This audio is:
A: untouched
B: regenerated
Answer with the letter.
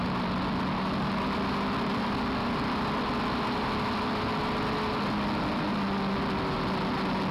A